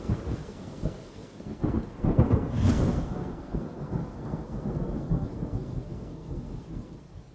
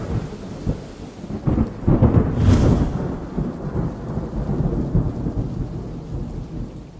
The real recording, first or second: second